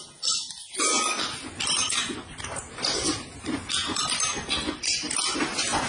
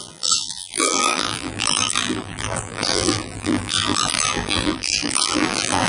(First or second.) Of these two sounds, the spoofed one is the second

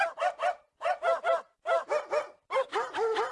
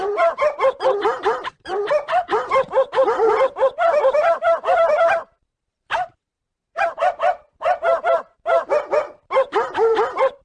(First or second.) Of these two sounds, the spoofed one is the second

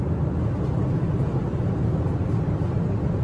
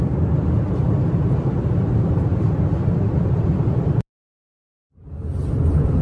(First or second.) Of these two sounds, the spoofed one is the second